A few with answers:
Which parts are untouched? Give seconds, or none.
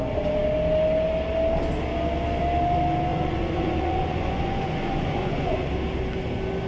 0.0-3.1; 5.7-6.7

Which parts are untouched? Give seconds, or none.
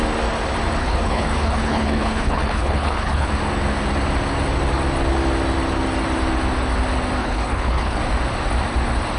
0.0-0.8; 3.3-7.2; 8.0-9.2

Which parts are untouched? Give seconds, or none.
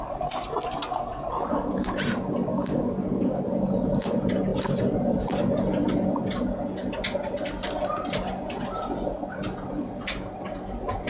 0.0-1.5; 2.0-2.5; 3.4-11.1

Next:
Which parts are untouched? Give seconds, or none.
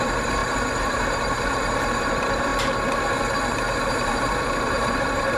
2.5-3.9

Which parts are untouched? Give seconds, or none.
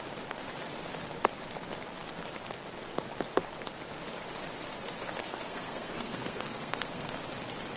0.0-5.2; 7.1-7.8